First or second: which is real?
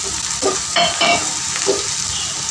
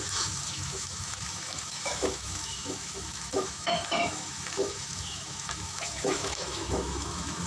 first